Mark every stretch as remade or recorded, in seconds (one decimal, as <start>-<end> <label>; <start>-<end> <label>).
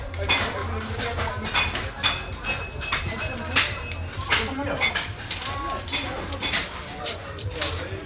0.0-0.6 remade; 0.6-4.9 recorded; 4.9-8.1 remade